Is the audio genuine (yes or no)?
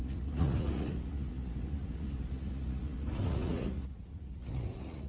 no